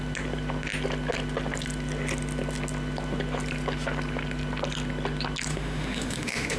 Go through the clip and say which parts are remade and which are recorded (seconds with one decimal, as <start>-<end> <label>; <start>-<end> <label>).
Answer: 0.0-5.5 recorded; 5.5-6.6 remade